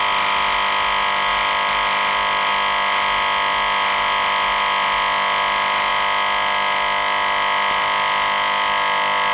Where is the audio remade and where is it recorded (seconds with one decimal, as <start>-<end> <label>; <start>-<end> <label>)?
0.0-9.3 recorded